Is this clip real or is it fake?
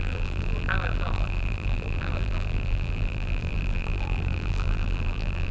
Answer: fake